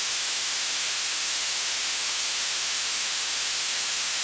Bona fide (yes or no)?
no